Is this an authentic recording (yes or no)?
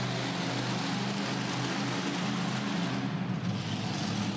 yes